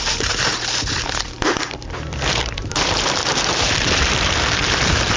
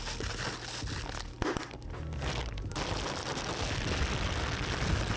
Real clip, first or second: second